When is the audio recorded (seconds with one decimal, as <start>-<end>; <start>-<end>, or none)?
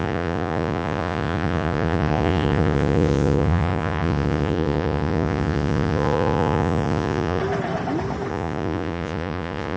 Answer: 7.4-8.3